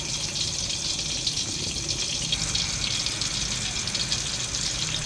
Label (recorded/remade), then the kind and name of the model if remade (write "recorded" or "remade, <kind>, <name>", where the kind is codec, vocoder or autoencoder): recorded